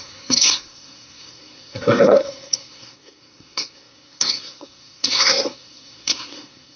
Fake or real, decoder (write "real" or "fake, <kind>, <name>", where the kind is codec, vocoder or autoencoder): fake, codec, SNAC